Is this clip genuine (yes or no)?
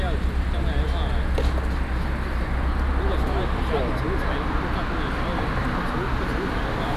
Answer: yes